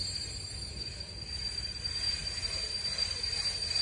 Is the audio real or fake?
fake